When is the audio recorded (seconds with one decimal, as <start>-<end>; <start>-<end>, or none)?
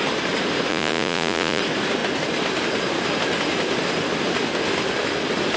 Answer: 0.0-0.7; 1.6-5.6